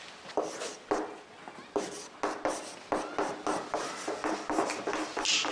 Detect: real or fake real